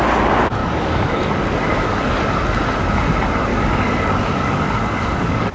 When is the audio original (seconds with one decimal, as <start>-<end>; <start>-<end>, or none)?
0.0-0.6; 2.1-3.5